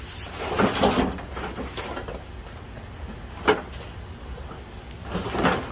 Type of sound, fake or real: real